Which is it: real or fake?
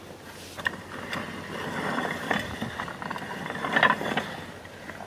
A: real